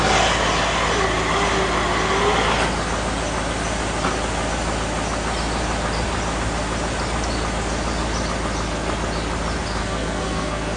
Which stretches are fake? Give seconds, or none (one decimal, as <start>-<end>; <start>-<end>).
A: 9.8-10.8